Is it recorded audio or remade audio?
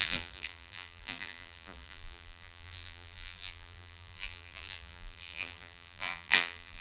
remade